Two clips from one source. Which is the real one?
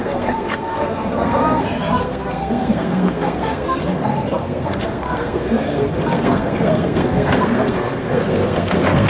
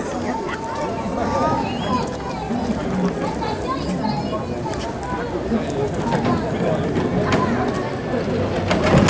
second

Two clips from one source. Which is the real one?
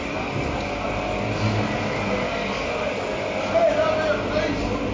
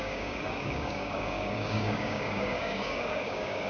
first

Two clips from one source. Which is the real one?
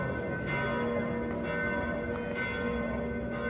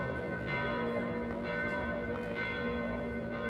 first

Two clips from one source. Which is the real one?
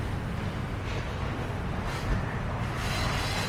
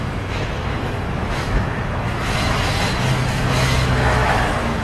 first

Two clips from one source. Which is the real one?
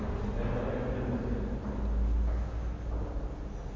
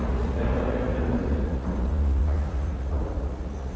first